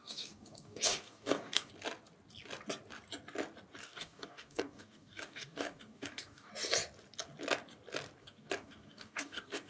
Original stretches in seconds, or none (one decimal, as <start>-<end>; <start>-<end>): 1.7-3.8; 6.5-8.2